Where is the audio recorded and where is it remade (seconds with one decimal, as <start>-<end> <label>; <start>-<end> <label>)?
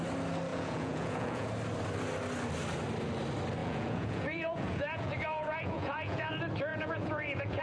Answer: 0.0-0.5 recorded; 0.5-1.5 remade; 1.5-3.6 recorded; 3.6-6.3 remade; 6.3-6.7 recorded; 6.7-7.6 remade